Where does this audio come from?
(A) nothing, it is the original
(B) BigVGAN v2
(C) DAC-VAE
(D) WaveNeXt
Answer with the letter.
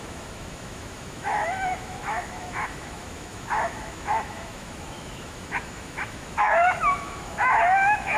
C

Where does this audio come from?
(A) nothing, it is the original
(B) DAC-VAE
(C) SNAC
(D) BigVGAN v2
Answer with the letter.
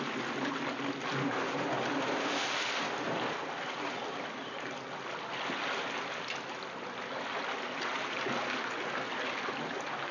A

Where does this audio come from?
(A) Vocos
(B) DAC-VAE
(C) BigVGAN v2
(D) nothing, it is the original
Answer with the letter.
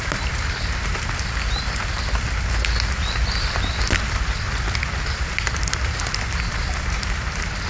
D